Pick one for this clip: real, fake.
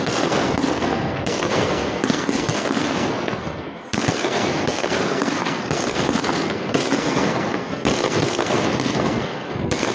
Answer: fake